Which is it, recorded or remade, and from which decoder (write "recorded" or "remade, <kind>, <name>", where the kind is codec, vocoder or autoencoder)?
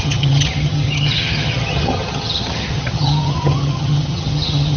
remade, vocoder, HiFi-GAN